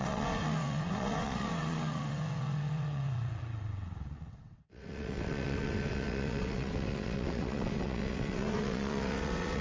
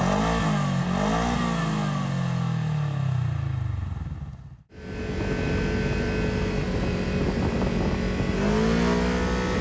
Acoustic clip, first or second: second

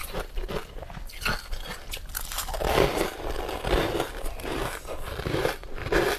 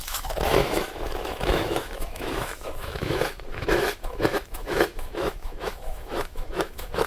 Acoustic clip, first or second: first